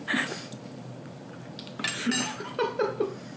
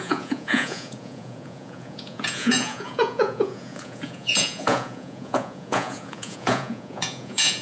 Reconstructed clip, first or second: second